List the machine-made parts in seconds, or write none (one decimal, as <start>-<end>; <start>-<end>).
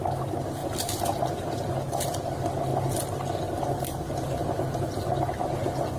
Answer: none